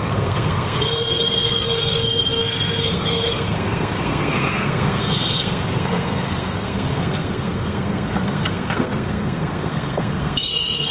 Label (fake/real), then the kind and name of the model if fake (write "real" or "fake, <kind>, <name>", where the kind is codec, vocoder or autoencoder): fake, codec, SNAC